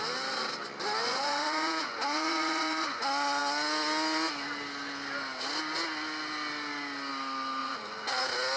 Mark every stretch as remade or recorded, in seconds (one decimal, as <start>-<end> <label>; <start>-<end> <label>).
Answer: 0.0-1.0 recorded; 1.0-3.0 remade; 3.0-7.6 recorded; 7.6-8.2 remade; 8.2-8.6 recorded